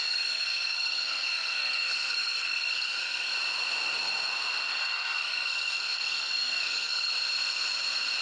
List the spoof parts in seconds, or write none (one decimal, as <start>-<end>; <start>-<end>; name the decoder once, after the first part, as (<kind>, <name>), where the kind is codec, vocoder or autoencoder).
0.0-3.3 (codec, SNAC); 4.7-7.1